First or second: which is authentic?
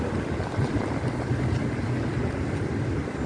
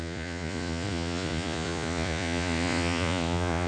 first